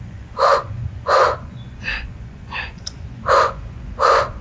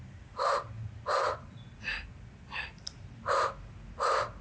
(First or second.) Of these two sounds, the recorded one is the second